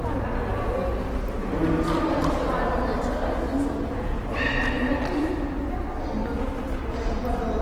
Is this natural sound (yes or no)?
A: yes